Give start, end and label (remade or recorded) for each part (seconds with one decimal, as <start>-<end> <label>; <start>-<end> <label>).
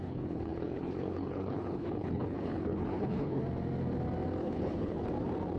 0.0-3.4 remade; 3.4-4.4 recorded; 4.4-5.0 remade; 5.0-5.6 recorded